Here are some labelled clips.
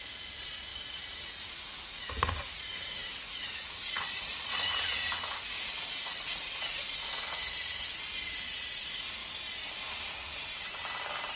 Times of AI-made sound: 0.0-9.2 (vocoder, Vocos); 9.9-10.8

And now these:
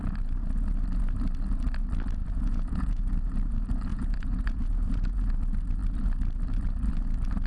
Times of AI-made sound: 2.2-3.1 (vocoder, Vocos); 3.9-5.3

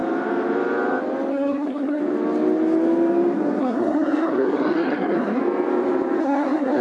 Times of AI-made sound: 1.3-2.0 (codec, SNAC); 3.6-5.4; 6.2-6.8

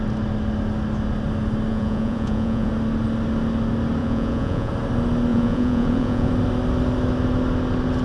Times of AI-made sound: 1.7-2.7 (vocoder, Vocos); 4.0-4.7; 5.3-6.3

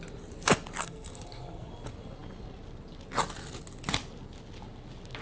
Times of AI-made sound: 0.8-1.7 (codec, SNAC)